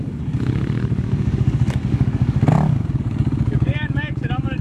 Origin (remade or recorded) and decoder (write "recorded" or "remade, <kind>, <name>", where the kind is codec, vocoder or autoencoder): remade, codec, DAC